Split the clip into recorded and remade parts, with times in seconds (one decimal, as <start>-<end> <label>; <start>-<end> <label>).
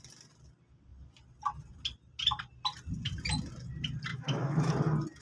0.0-4.1 recorded; 4.1-4.7 remade; 4.7-5.2 recorded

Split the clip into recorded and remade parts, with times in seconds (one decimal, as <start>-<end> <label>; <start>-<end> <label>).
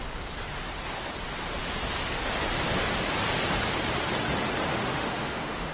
0.0-4.8 recorded; 4.8-5.7 remade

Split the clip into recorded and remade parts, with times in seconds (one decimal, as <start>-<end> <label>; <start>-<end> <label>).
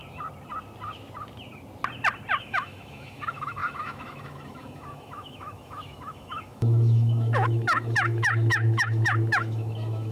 0.0-2.4 recorded; 2.4-10.1 remade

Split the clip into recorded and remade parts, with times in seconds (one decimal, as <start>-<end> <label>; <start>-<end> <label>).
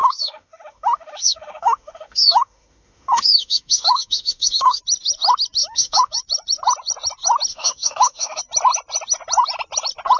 0.0-4.8 remade; 4.8-5.6 recorded; 5.6-6.2 remade; 6.2-7.5 recorded; 7.5-8.4 remade; 8.4-10.2 recorded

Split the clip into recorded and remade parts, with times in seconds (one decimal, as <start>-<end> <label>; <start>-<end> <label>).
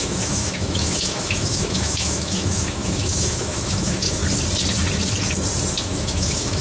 0.0-4.2 remade; 4.2-5.8 recorded; 5.8-6.6 remade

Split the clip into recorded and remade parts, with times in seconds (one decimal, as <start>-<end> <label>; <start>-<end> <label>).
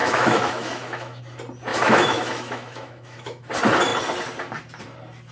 0.0-1.2 remade; 1.2-1.7 recorded; 1.7-3.5 remade; 3.5-5.3 recorded